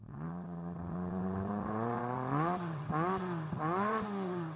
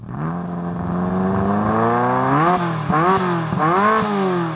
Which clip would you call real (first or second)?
second